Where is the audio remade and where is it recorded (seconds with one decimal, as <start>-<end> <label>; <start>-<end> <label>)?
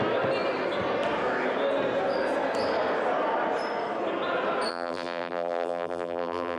0.0-4.7 recorded; 4.7-6.6 remade